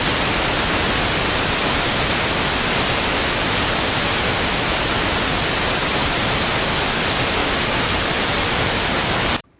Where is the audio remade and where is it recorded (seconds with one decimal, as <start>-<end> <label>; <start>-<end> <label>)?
0.0-7.4 recorded; 7.4-9.6 remade